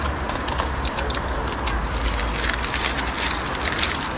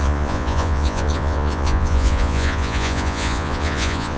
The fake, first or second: second